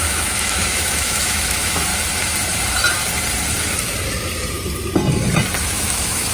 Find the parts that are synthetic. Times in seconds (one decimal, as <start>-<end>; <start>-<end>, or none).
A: 0.0-1.9; 5.6-6.3